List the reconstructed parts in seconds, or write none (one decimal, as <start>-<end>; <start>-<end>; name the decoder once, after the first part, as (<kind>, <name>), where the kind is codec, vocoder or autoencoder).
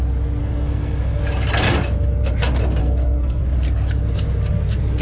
0.4-1.2 (codec, SNAC); 2.8-3.4